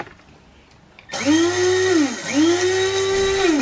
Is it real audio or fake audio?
real